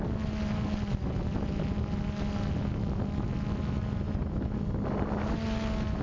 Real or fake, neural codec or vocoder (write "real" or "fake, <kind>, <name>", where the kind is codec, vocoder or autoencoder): real